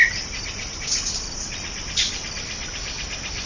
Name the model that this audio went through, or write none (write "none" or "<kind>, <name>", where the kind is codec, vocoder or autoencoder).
none